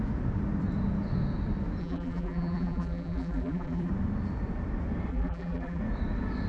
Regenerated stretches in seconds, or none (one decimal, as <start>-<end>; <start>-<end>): 1.8-3.9; 5.1-5.8